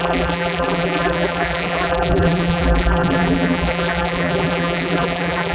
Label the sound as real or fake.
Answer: fake